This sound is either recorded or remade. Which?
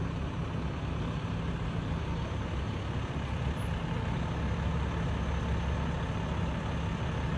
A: recorded